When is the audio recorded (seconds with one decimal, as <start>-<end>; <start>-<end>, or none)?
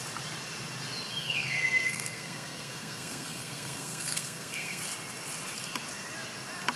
0.0-1.2; 4.8-6.8